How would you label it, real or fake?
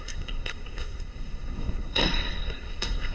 fake